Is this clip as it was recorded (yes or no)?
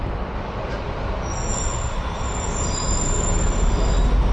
yes